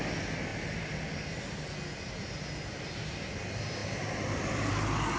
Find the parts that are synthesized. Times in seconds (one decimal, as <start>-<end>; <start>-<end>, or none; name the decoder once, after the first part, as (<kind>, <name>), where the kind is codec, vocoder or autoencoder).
0.5-1.2 (vocoder, BigVGAN v2); 3.8-4.7